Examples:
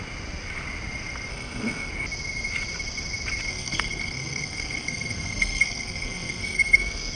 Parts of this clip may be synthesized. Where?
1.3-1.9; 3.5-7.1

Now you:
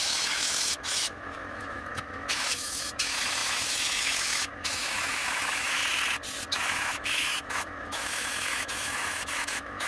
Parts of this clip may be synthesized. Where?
0.0-5.8; 6.5-9.9

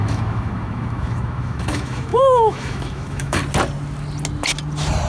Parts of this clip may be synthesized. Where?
0.0-3.4